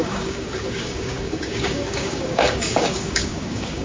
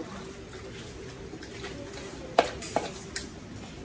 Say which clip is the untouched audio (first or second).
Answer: second